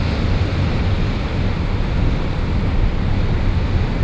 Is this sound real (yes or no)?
yes